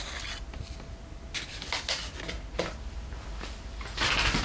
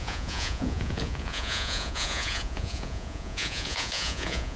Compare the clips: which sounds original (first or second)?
first